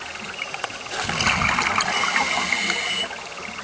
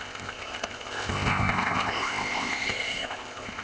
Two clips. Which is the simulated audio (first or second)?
second